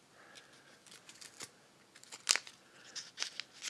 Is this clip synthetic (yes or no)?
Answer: no